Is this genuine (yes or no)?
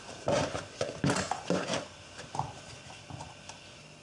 yes